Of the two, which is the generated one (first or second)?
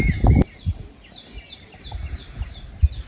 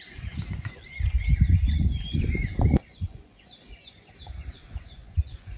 second